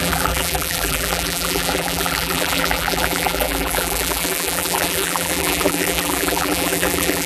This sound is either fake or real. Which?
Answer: fake